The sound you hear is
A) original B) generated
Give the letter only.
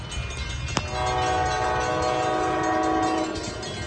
A